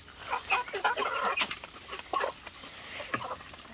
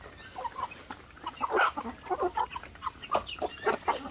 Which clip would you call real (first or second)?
second